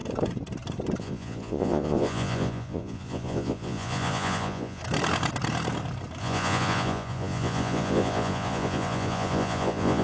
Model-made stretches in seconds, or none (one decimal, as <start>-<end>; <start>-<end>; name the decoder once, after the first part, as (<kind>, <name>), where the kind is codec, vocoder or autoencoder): 1.0-4.8 (vocoder, Vocos); 6.2-10.0